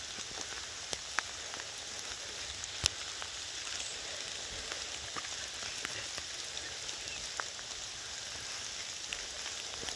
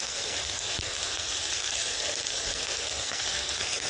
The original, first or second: first